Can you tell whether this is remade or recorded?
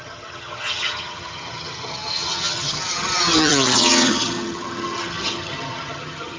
remade